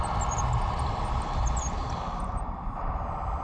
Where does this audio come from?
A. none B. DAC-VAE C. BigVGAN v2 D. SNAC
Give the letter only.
A